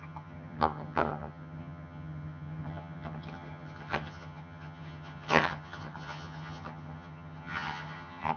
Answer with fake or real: fake